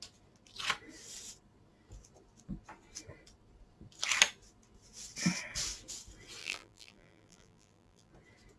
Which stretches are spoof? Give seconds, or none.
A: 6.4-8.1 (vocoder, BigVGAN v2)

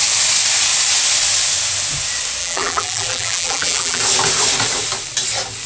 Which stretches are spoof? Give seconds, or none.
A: 2.4-4.0 (vocoder, BigVGAN v2)

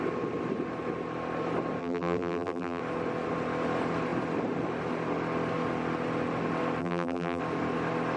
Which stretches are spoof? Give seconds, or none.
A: 1.8-2.8 (vocoder, BigVGAN v2); 6.8-7.4

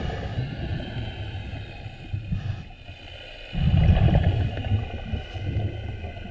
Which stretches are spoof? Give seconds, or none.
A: 0.7-4.5 (vocoder, BigVGAN v2)

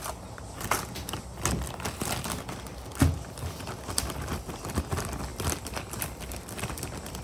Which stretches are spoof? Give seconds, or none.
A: 5.3-6.3 (vocoder, BigVGAN v2)

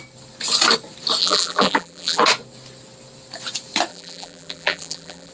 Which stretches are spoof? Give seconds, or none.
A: 1.2-2.2 (vocoder, BigVGAN v2); 3.9-5.3